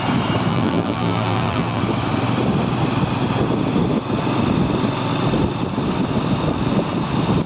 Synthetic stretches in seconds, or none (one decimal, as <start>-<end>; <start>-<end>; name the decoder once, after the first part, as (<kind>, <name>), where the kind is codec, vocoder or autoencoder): 0.5-1.8 (vocoder, BigVGAN v2)